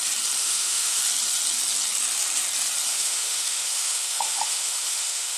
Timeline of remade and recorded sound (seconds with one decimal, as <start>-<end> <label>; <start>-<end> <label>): 0.0-0.4 recorded; 0.4-1.0 remade; 1.0-2.9 recorded; 2.9-5.4 remade